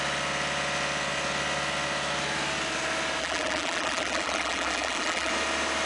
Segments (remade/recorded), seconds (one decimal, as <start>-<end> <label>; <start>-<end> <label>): 0.0-3.2 recorded; 3.2-5.3 remade; 5.3-5.9 recorded